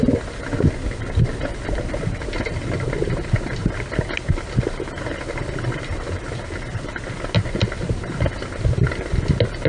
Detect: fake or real real